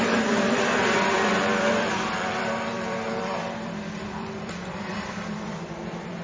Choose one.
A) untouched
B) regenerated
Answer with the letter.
B